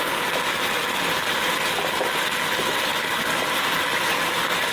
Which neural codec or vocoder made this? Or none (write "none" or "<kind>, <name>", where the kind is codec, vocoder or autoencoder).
none